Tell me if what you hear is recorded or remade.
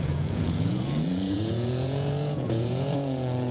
remade